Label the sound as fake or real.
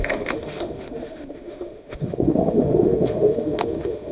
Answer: fake